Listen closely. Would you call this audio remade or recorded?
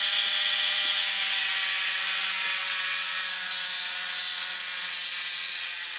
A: remade